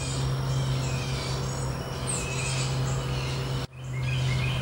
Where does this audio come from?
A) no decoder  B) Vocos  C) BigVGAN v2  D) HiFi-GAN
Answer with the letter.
A